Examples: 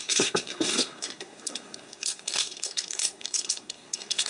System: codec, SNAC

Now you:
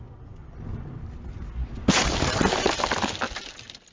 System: none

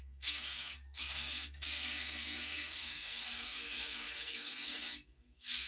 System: codec, SNAC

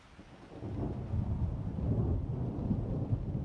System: none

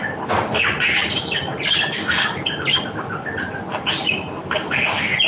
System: none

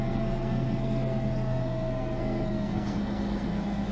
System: codec, SNAC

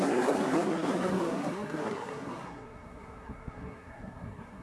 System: codec, SNAC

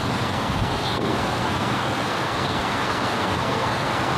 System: codec, SNAC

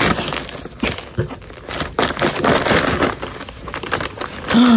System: none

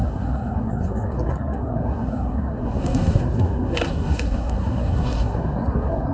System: codec, SNAC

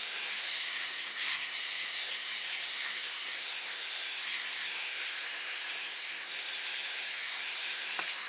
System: codec, SNAC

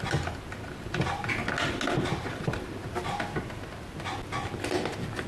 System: none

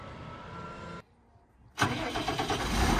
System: none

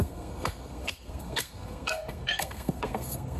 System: codec, SNAC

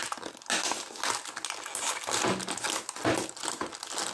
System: none